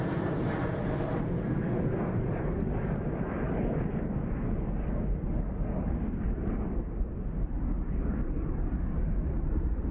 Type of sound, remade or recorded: recorded